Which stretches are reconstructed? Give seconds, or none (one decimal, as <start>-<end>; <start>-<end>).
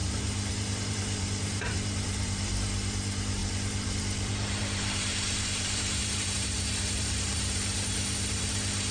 0.0-8.9